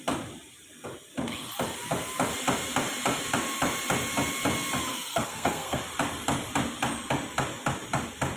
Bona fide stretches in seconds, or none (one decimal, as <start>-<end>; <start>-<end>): 0.0-4.9; 5.8-8.4